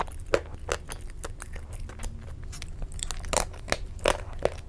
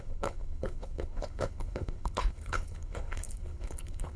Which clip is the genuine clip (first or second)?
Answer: first